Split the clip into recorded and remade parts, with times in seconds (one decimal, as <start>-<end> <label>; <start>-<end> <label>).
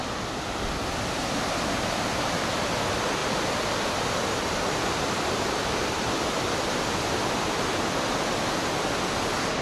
0.0-3.2 recorded; 3.2-6.7 remade; 6.7-9.6 recorded